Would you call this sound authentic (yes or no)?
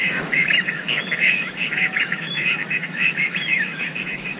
no